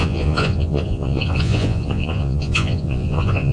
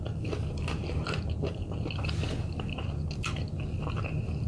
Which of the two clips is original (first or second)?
second